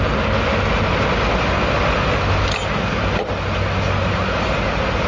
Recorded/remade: recorded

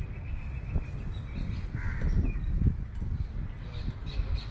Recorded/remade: recorded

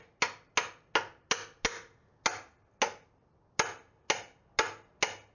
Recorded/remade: recorded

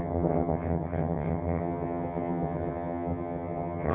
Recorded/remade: remade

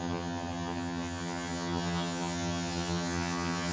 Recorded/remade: remade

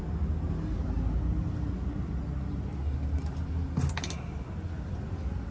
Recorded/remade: recorded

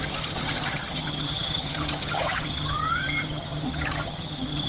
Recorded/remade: remade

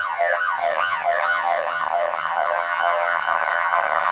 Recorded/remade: remade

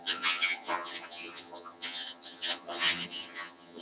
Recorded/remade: remade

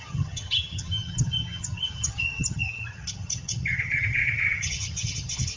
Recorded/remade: remade